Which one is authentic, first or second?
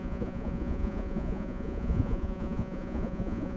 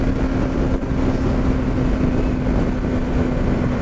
second